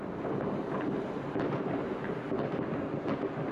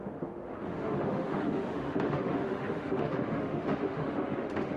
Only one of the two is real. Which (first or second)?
first